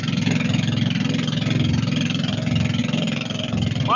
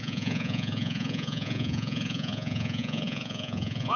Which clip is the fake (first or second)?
second